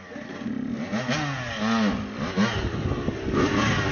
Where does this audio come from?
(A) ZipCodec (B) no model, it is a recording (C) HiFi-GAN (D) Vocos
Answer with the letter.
B